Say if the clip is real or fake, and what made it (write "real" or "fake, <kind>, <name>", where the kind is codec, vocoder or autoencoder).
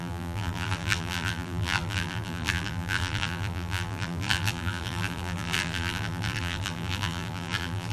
fake, vocoder, BigVGAN v2